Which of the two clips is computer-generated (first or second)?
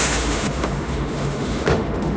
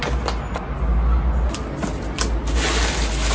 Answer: first